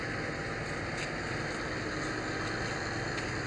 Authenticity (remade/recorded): recorded